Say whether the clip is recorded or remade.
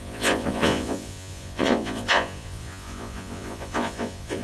remade